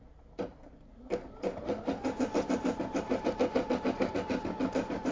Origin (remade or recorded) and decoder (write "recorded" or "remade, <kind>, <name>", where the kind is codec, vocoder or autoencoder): recorded